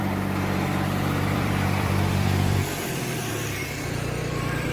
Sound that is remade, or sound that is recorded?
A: remade